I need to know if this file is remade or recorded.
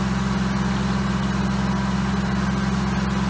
recorded